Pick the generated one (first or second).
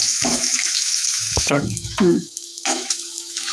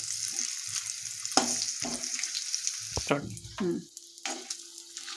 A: first